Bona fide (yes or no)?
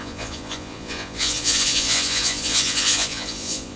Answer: no